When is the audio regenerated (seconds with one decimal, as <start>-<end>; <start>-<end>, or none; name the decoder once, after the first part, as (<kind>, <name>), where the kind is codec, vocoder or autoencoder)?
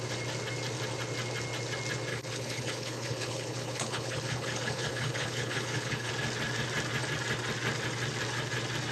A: 2.1-6.1 (codec, HILCodec)